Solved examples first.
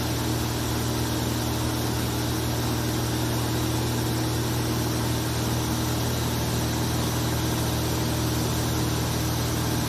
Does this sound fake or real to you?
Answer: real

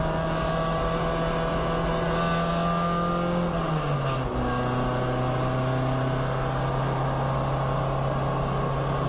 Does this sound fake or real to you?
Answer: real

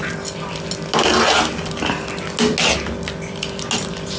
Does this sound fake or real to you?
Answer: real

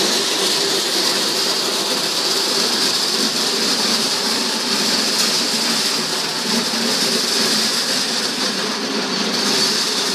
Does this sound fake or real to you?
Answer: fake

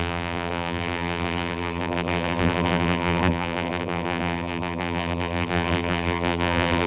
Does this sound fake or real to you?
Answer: fake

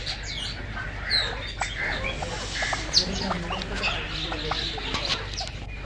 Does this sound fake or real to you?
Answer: real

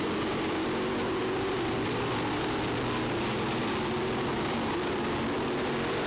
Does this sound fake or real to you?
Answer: fake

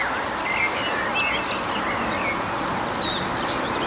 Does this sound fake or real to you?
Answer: real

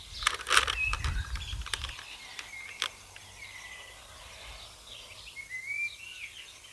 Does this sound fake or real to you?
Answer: real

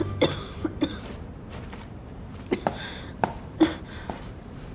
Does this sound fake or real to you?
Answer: fake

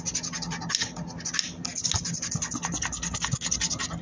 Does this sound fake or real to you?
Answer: real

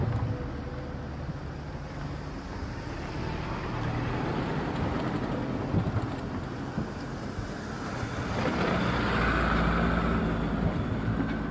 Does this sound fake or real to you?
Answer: real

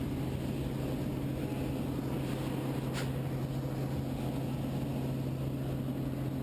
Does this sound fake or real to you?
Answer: real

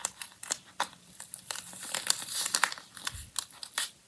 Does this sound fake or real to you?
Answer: fake